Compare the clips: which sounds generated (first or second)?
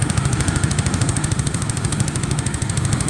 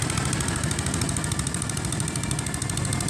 first